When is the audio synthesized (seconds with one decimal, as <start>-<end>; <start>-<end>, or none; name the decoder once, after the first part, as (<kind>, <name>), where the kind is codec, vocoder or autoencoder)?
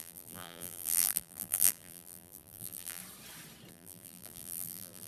0.0-3.0 (vocoder, BigVGAN v2); 3.7-5.1